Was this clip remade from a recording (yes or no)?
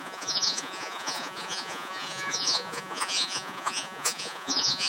yes